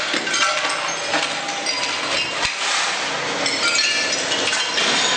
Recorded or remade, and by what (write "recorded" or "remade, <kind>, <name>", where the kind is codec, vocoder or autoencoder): recorded